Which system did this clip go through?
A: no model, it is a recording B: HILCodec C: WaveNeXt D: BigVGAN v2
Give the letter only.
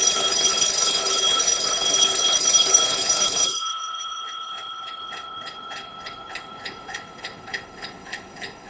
B